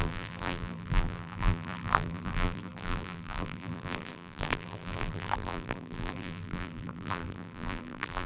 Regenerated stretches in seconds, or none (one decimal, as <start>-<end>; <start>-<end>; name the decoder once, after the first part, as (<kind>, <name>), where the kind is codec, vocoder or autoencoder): 0.0-8.3 (vocoder, BigVGAN v2)